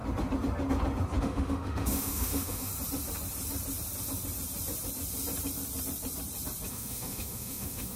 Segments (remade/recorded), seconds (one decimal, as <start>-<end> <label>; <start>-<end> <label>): 0.0-1.2 recorded; 1.2-2.7 remade; 2.7-6.7 recorded; 6.7-8.0 remade

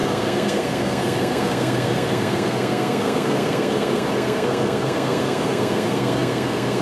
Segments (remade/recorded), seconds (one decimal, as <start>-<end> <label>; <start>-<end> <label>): 0.0-6.8 remade

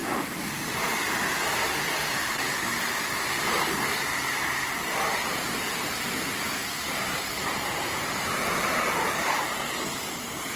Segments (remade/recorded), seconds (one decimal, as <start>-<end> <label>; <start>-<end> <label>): 0.0-0.9 recorded; 0.9-2.7 remade; 2.7-3.9 recorded; 3.9-10.6 remade

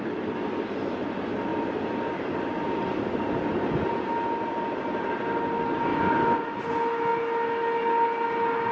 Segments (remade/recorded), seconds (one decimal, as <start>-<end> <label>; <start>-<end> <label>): 0.0-5.9 recorded; 5.9-6.6 remade; 6.6-8.7 recorded

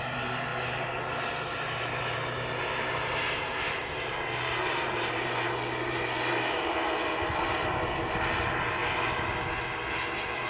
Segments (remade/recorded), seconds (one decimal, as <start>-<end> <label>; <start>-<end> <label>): 0.0-0.5 remade; 0.5-1.3 recorded; 1.3-10.5 remade